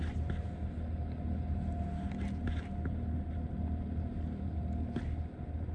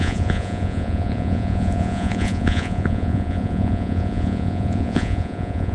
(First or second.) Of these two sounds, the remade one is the second